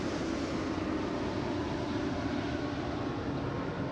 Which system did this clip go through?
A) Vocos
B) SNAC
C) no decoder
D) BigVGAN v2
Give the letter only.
C